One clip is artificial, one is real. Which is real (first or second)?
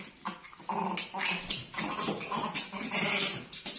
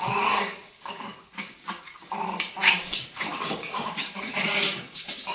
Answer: first